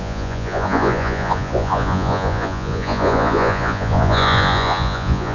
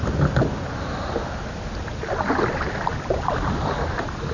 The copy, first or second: first